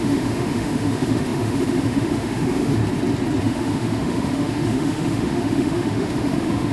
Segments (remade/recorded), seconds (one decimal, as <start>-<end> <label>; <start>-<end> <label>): 0.0-2.8 remade; 2.8-3.4 recorded; 3.4-6.7 remade